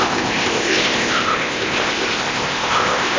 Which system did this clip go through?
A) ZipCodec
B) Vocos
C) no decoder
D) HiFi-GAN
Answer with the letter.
A